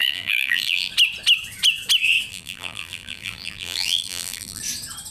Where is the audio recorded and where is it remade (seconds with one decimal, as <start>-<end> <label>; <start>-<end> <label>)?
0.0-0.9 remade; 0.9-2.3 recorded; 2.3-4.6 remade; 4.6-5.1 recorded